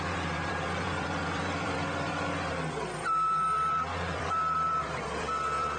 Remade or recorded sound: remade